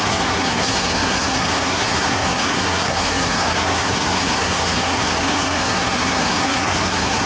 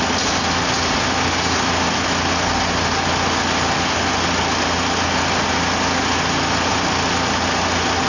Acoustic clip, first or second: second